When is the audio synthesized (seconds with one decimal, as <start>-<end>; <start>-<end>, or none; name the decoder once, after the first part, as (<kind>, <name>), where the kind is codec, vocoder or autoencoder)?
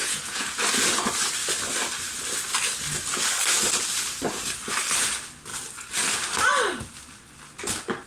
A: 0.0-0.6 (vocoder, Vocos)